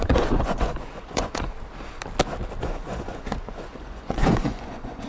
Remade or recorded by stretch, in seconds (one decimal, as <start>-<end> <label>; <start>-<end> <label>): 0.0-1.5 remade; 1.5-2.6 recorded; 2.6-5.1 remade